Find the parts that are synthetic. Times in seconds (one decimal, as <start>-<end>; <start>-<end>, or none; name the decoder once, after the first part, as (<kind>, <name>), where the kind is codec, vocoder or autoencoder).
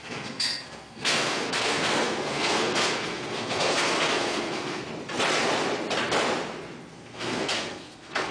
0.0-4.8 (codec, SNAC); 6.9-8.3